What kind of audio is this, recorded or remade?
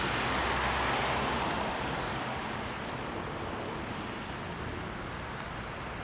recorded